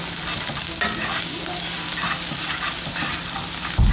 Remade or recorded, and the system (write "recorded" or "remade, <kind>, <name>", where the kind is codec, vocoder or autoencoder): recorded